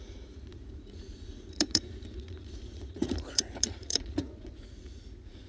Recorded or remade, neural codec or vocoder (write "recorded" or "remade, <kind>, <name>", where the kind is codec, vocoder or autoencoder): remade, vocoder, Vocos